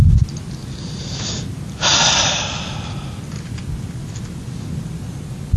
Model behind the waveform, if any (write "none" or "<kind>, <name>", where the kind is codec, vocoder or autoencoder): none